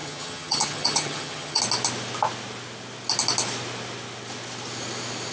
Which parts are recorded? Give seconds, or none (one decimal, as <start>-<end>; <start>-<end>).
1.6-5.3

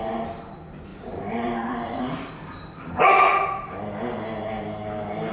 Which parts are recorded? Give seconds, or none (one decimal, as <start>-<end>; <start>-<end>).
0.0-0.9; 2.0-3.3; 3.8-5.3

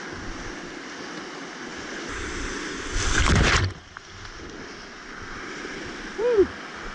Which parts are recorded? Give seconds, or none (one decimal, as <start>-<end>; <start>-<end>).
0.0-6.9

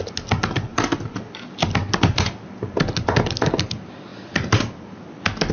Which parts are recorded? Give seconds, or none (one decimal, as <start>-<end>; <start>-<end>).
0.0-5.5

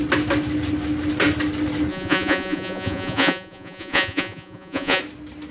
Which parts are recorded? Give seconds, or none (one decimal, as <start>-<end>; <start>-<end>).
0.0-1.9; 5.0-5.5

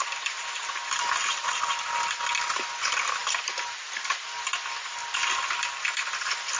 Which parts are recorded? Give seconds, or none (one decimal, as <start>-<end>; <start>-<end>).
0.0-6.6